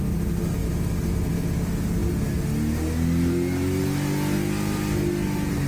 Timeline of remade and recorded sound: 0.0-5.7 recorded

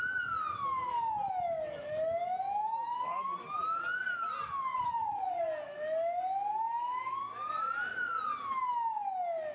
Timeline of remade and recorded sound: 0.0-4.7 recorded; 4.7-5.4 remade; 5.4-9.5 recorded

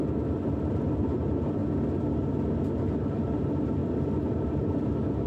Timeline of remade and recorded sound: 0.0-1.6 remade; 1.6-2.6 recorded; 2.6-5.3 remade

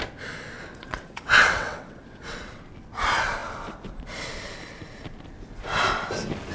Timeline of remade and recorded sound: 0.0-0.7 recorded; 0.7-2.6 remade; 2.6-6.5 recorded